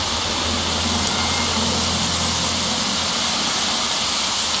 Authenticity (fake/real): real